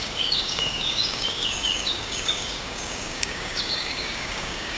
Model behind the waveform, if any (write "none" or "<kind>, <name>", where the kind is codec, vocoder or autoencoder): codec, DAC